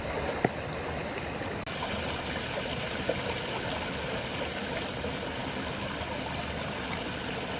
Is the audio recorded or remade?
recorded